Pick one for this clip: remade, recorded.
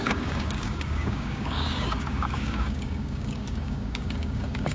remade